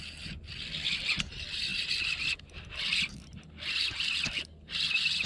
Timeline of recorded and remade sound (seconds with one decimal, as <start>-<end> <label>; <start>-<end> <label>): 0.0-5.3 recorded